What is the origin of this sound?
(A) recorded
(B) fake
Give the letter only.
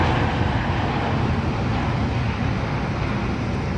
A